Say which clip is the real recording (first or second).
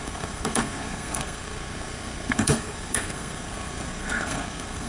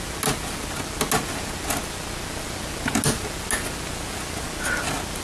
second